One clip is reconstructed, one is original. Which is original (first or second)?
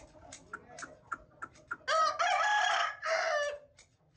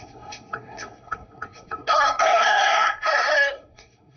first